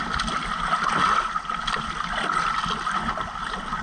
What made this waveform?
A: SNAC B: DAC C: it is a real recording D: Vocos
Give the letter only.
C